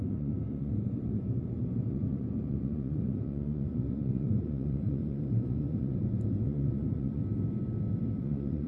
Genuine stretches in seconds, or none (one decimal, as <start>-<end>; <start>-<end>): 7.2-8.2